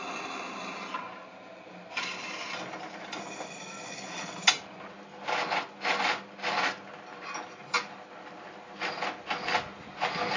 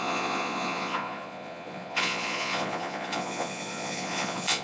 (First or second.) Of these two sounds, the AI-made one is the second